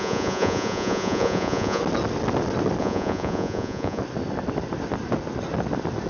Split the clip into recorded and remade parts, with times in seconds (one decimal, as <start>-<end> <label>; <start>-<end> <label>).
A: 0.0-1.8 remade; 1.8-2.8 recorded; 2.8-4.0 remade; 4.0-6.1 recorded

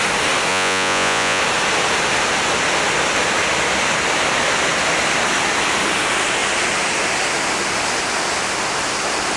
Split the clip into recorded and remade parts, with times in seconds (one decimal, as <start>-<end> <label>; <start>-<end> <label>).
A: 0.0-0.5 recorded; 0.5-1.4 remade; 1.4-9.4 recorded

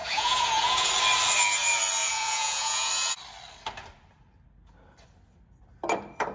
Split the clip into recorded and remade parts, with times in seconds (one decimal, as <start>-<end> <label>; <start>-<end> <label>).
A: 0.0-0.9 remade; 0.9-2.0 recorded; 2.0-2.9 remade; 2.9-6.3 recorded

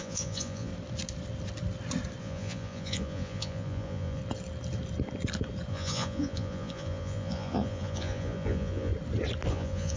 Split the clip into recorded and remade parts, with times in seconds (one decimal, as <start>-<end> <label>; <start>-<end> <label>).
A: 0.0-0.7 remade; 0.7-2.2 recorded; 2.2-4.2 remade; 4.2-5.7 recorded; 5.7-8.9 remade; 8.9-9.5 recorded; 9.5-10.0 remade

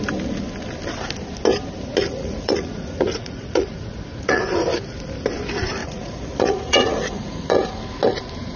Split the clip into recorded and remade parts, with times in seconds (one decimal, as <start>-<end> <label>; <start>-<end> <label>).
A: 0.0-2.1 recorded; 2.1-4.4 remade; 4.4-5.8 recorded; 5.8-7.8 remade; 7.8-8.6 recorded

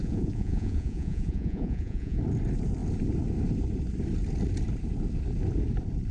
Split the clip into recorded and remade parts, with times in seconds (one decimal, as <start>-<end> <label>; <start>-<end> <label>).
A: 0.0-2.2 remade; 2.2-6.1 recorded